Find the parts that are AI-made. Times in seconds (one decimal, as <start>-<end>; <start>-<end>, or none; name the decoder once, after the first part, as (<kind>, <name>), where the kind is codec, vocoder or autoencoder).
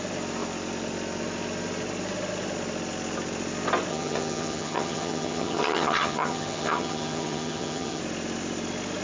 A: 3.9-8.0 (vocoder, HiFi-GAN)